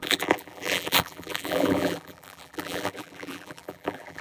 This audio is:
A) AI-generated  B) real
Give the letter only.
A